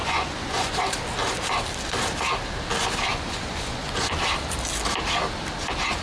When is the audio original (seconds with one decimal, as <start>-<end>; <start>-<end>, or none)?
0.8-3.1; 4.1-6.0